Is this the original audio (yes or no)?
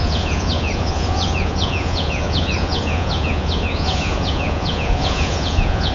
no